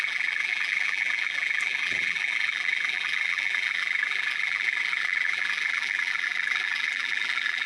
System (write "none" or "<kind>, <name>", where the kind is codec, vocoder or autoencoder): vocoder, BigVGAN v2